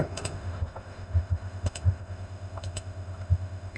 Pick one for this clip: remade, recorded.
remade